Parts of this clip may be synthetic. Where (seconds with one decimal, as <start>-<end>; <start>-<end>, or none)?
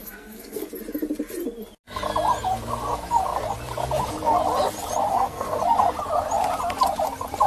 0.0-0.7; 5.1-5.6